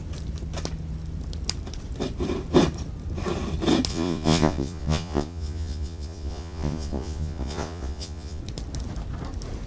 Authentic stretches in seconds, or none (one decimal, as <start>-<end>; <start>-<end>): 0.0-3.9; 8.4-9.7